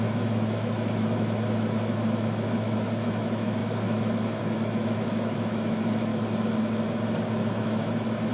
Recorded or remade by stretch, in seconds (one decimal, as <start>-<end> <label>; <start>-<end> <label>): 0.0-6.1 remade; 6.1-7.3 recorded; 7.3-8.3 remade